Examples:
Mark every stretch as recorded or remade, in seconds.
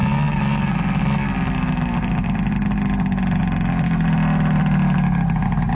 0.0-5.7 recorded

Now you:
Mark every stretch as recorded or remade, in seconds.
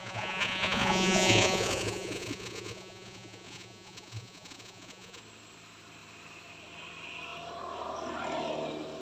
0.0-5.2 remade; 5.2-9.0 recorded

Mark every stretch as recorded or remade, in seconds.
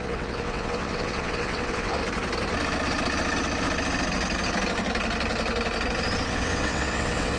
0.0-2.0 remade; 2.0-6.3 recorded; 6.3-7.4 remade